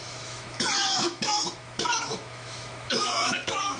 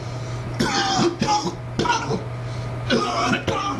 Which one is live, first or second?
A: second